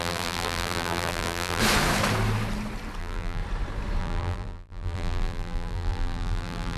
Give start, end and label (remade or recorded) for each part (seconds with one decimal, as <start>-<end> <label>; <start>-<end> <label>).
0.0-1.6 remade; 1.6-3.0 recorded; 3.0-3.4 remade; 3.4-4.0 recorded; 4.0-6.8 remade